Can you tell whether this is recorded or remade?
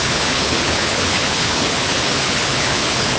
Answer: remade